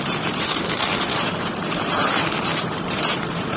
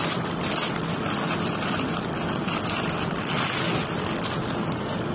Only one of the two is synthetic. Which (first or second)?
first